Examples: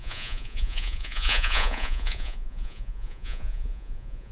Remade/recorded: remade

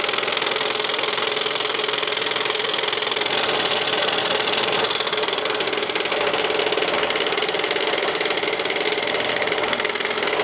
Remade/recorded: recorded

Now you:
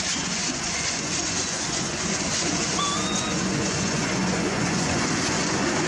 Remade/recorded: remade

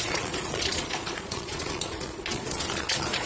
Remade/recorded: remade